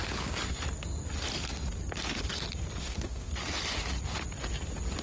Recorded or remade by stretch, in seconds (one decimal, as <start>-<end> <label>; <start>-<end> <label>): 0.0-2.8 recorded; 2.8-3.3 remade; 3.3-5.0 recorded